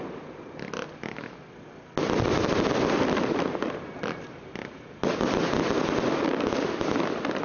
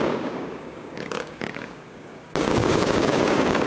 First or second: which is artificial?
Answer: second